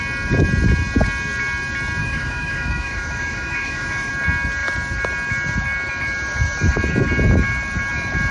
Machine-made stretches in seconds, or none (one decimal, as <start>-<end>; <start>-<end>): 2.0-4.1